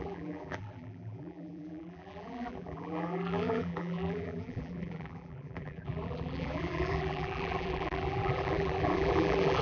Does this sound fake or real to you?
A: fake